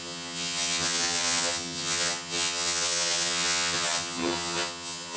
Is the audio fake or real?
fake